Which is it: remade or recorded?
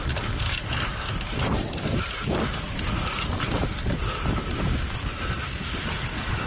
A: recorded